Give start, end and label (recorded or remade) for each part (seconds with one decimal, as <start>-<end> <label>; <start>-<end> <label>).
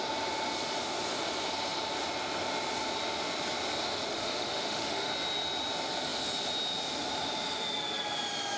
0.0-4.1 recorded; 4.1-5.1 remade; 5.1-8.6 recorded